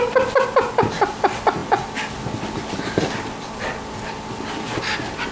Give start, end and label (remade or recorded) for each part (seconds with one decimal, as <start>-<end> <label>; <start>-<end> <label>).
0.0-5.3 recorded